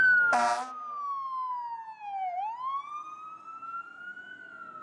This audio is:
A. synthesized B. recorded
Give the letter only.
B